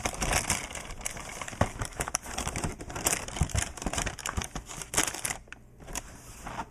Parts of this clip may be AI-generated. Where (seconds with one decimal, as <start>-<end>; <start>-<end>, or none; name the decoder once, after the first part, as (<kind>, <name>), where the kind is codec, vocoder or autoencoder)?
none